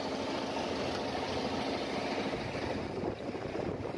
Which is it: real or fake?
real